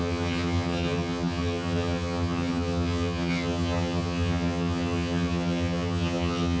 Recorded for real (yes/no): no